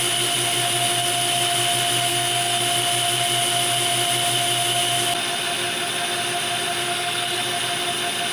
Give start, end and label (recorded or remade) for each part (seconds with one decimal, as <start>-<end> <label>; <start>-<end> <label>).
0.0-2.1 recorded; 2.1-2.6 remade; 2.6-6.8 recorded; 6.8-7.4 remade; 7.4-8.3 recorded

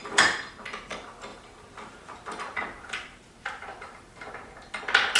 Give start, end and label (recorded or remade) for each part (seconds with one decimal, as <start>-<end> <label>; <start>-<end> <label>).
0.0-1.3 recorded; 1.3-4.4 remade; 4.4-5.2 recorded